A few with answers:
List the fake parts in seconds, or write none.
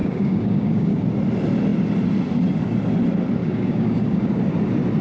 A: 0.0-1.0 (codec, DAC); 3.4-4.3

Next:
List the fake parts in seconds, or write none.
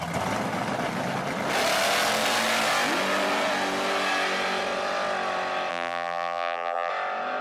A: 5.7-6.9 (vocoder, BigVGAN v2)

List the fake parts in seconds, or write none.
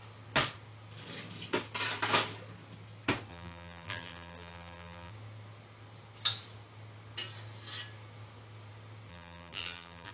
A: 3.3-5.1 (vocoder, BigVGAN v2); 9.1-10.1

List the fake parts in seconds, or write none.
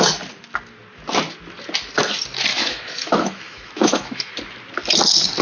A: 2.5-4.3 (autoencoder, DAC-VAE)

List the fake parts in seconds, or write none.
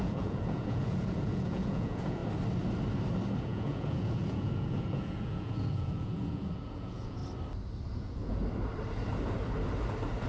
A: 0.0-2.2 (vocoder, Vocos); 3.4-7.2; 7.9-8.4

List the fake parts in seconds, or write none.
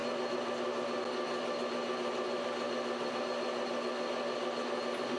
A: none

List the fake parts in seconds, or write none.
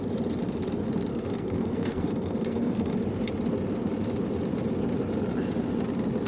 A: 1.1-2.9 (codec, SNAC)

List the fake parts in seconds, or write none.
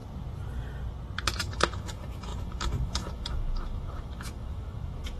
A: 1.4-5.2 (autoencoder, DAC-VAE)